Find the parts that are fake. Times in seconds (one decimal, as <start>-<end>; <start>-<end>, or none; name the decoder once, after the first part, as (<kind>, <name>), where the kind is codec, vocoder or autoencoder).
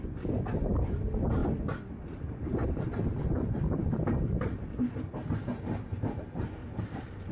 1.4-4.0 (vocoder, BigVGAN v2); 6.6-7.3